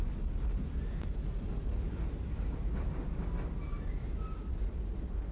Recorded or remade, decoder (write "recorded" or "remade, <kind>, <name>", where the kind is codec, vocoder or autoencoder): recorded